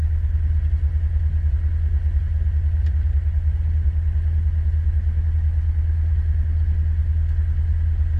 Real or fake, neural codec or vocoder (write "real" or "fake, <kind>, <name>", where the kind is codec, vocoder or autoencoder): real